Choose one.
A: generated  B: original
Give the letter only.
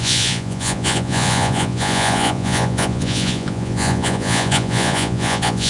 A